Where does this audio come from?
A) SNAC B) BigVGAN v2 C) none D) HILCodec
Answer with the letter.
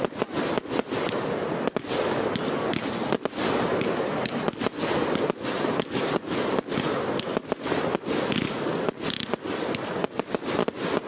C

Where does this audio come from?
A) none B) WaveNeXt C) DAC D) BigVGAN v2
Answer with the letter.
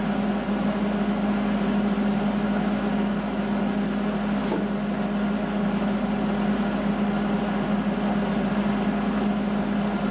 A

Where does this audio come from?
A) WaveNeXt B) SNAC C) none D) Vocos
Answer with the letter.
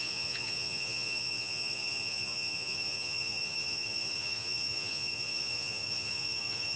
D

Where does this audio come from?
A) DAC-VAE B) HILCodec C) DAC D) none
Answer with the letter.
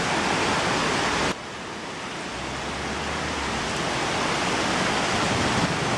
D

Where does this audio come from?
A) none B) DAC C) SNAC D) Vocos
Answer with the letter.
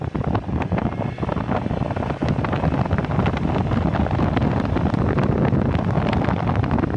A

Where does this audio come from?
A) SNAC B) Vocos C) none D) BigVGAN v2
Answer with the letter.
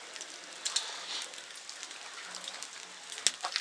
C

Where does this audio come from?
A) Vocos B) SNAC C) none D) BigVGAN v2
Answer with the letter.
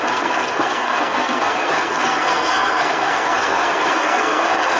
B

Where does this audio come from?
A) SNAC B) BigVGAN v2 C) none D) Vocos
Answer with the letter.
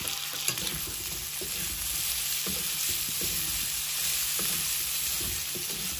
C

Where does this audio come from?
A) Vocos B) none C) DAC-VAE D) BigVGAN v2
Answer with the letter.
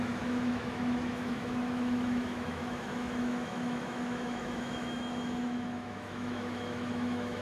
C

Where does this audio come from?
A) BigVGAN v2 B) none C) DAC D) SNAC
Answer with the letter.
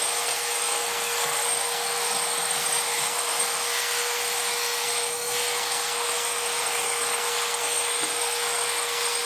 D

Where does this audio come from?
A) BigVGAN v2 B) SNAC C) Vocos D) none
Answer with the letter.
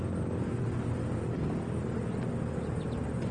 D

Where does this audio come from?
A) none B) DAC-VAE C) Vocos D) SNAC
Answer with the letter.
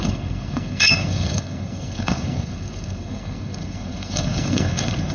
D